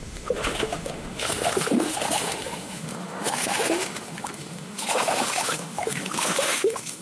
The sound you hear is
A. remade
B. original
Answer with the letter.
A